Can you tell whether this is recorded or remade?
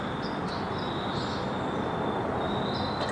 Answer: recorded